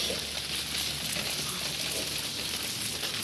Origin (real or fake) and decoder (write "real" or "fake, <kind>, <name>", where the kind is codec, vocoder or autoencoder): real